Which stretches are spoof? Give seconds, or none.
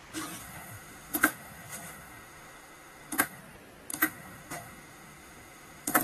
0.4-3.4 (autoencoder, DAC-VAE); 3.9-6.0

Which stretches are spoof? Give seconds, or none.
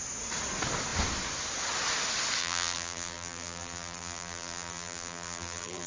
2.4-5.9 (vocoder, BigVGAN v2)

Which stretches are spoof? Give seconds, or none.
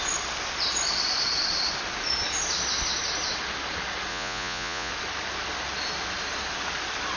4.1-4.9 (vocoder, Vocos)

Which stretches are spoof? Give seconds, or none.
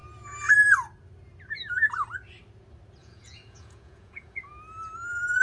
3.0-4.5 (vocoder, Vocos)